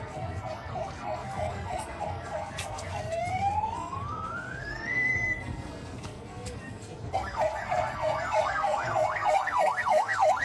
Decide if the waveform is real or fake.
fake